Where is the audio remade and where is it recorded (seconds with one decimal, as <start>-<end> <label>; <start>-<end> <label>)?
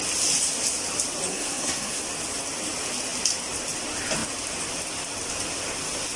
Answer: 0.0-1.3 recorded; 1.3-2.0 remade; 2.0-6.2 recorded